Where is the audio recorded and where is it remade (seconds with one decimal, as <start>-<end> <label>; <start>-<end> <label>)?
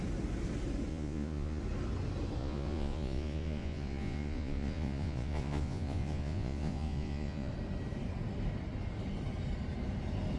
0.0-0.9 recorded; 0.9-1.6 remade; 1.6-2.4 recorded; 2.4-7.5 remade; 7.5-10.4 recorded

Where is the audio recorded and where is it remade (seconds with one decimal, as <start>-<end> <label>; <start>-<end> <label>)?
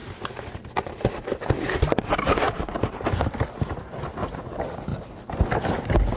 0.0-6.2 recorded